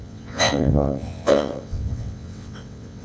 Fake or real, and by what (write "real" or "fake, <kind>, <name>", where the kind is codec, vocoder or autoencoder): fake, vocoder, WaveNeXt